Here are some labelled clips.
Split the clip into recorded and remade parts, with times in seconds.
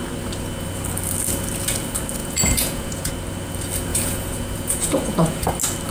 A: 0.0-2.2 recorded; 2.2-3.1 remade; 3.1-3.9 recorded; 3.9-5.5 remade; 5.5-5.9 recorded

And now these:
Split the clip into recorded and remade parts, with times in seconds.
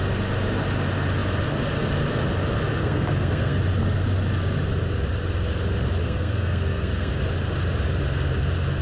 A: 0.0-2.8 recorded; 2.8-3.6 remade; 3.6-6.0 recorded; 6.0-7.1 remade; 7.1-8.8 recorded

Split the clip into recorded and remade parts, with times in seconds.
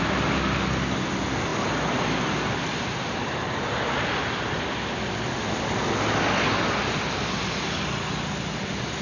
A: 0.0-9.0 recorded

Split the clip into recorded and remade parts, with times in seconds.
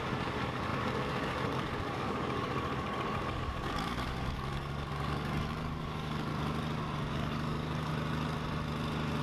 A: 0.0-6.3 remade; 6.3-7.1 recorded; 7.1-7.9 remade; 7.9-9.2 recorded